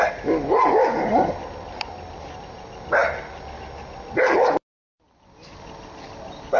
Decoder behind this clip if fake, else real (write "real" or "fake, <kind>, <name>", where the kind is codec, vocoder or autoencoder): real